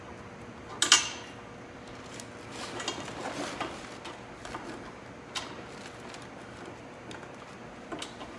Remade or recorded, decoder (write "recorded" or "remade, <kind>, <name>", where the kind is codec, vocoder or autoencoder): recorded